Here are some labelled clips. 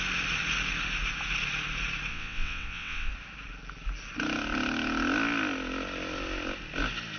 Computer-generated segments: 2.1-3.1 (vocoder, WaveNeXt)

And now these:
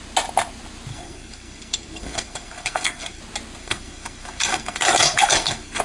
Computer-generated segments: 0.9-3.2 (codec, SNAC); 3.6-5.8

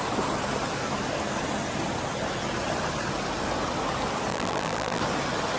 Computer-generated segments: 4.3-5.0 (vocoder, BigVGAN v2)

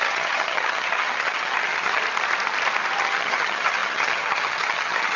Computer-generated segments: 0.0-2.0 (vocoder, HiFi-GAN); 3.0-5.2

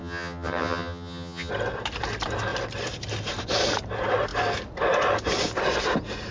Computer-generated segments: 0.0-1.5 (vocoder, HiFi-GAN)

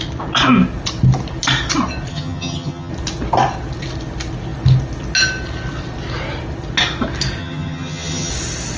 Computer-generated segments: 2.1-2.9 (vocoder, HiFi-GAN); 7.4-8.3

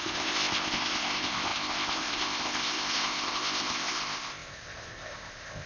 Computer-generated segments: 0.0-5.7 (codec, ZipCodec)

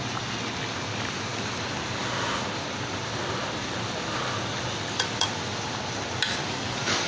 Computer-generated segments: 6.4-7.1 (codec, DAC)